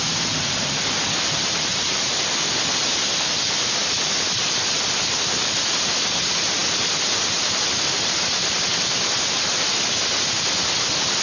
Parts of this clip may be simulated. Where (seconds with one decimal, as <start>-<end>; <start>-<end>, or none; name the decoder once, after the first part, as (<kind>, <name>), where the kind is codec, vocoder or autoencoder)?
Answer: none